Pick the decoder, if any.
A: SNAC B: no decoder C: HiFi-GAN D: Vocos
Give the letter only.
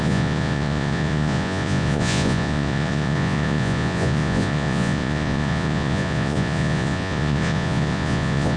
D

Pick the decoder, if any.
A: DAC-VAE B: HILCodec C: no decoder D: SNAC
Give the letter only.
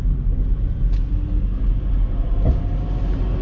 C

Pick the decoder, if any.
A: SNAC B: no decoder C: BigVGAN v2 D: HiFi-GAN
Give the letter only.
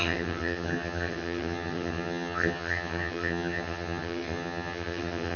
D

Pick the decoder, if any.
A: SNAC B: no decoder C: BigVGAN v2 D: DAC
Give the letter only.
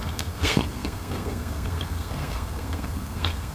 A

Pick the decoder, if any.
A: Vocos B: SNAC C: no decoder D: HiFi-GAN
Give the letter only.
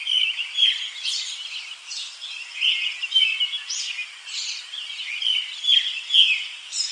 C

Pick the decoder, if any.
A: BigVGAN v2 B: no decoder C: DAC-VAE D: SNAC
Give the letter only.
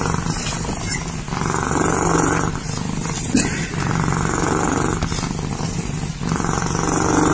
B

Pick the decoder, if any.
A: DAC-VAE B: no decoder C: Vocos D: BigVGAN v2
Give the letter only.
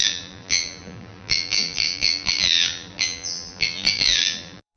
D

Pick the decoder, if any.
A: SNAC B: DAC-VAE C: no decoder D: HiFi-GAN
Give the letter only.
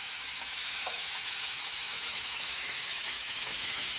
B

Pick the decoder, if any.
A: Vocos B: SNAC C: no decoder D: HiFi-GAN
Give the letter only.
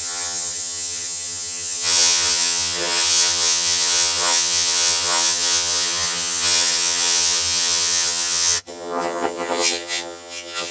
D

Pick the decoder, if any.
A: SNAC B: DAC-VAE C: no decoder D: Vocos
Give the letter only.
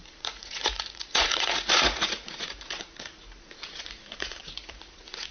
D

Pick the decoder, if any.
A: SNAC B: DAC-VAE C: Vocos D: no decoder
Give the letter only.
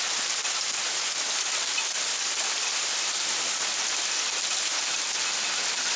D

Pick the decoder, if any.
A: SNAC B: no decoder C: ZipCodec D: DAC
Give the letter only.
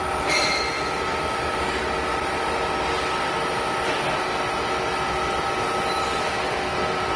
B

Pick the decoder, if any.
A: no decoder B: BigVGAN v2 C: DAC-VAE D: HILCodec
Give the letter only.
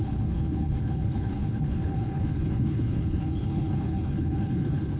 D